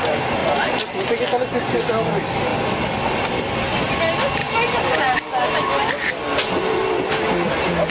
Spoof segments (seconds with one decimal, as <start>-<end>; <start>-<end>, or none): none